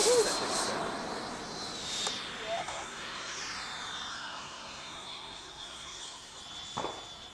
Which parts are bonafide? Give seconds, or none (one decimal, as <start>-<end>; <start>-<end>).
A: 0.0-2.6; 3.4-4.1; 6.4-7.3